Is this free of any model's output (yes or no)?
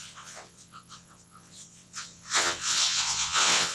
no